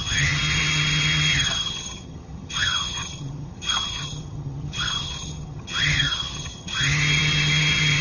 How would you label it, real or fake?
fake